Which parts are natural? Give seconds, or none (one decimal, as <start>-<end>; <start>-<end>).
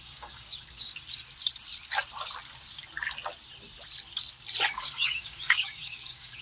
0.9-4.7